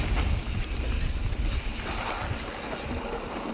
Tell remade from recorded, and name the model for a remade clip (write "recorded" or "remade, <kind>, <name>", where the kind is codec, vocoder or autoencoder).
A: recorded